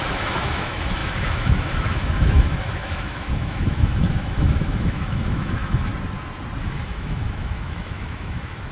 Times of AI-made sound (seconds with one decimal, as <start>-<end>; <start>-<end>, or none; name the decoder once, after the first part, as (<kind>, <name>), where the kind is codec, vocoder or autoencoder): 0.0-5.9 (autoencoder, DAC-VAE); 6.6-8.7